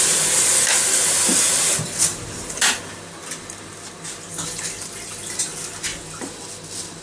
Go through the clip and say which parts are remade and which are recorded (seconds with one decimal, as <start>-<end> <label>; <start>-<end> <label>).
0.0-1.3 recorded; 1.3-5.2 remade; 5.2-5.9 recorded; 5.9-6.5 remade; 6.5-7.0 recorded